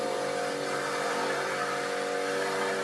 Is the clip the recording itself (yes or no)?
yes